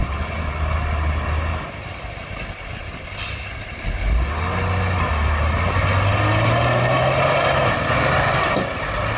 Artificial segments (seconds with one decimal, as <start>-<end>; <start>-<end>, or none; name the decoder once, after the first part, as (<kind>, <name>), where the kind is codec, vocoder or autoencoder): none